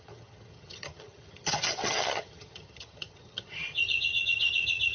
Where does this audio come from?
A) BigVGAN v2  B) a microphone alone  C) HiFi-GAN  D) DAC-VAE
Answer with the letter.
C